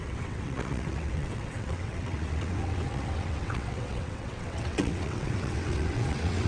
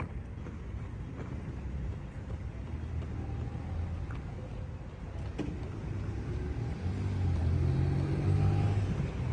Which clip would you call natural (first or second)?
second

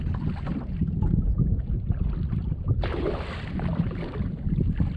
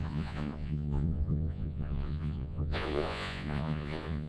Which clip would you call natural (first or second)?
first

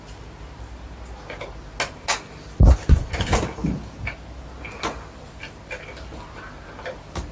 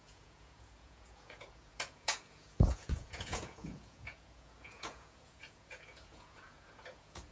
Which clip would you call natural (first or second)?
first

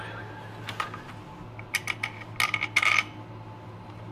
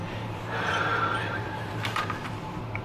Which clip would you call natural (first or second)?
first